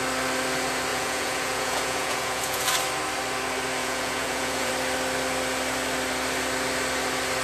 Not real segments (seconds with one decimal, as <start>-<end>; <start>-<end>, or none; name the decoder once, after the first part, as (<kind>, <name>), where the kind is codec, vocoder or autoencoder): 0.9-2.7 (vocoder, Vocos); 3.8-4.7